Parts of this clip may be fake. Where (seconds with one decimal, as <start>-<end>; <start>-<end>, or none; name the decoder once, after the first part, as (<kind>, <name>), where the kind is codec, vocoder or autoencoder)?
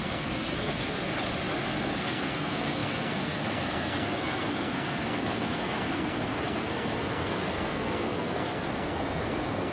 0.0-1.1 (codec, SNAC); 1.8-9.7